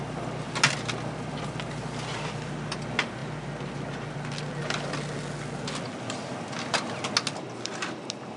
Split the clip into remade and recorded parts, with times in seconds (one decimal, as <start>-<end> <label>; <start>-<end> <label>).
0.0-8.4 recorded